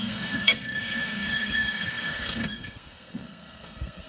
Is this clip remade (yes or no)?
yes